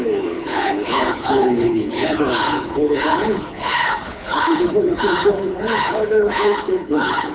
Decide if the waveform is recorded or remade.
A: remade